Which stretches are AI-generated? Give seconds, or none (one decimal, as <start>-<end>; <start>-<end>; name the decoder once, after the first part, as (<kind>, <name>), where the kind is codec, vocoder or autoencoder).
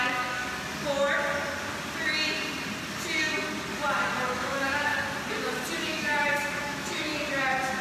0.0-0.4 (autoencoder, DAC-VAE); 4.2-4.9; 5.8-7.1